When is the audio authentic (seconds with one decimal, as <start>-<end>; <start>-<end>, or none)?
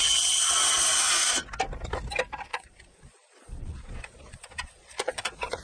0.0-2.5